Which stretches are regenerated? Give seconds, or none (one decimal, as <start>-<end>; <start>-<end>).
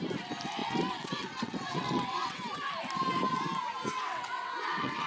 0.6-2.7; 3.9-5.1